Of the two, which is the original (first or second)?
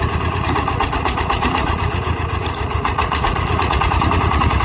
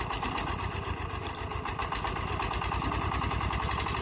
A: second